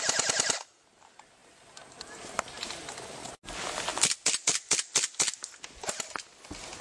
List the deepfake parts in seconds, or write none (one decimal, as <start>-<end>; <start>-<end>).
none